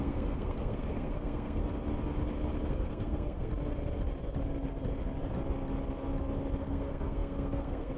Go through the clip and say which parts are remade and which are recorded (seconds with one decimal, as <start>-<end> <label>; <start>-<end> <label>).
0.0-1.6 remade; 1.6-2.7 recorded; 2.7-3.5 remade; 3.5-6.6 recorded; 6.6-8.0 remade